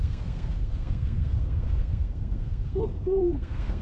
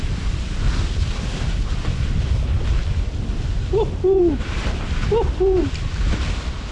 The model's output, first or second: first